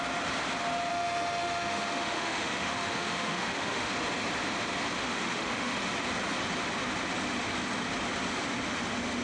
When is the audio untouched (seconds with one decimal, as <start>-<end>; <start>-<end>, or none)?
0.0-0.9; 3.9-5.0; 5.8-9.2